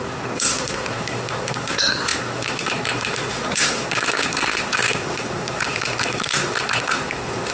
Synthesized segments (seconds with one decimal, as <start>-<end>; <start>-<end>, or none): 0.0-7.5